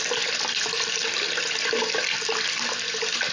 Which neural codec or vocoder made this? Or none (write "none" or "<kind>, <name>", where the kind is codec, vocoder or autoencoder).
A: none